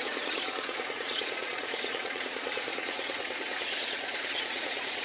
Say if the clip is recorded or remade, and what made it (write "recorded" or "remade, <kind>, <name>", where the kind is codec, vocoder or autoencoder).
remade, vocoder, Vocos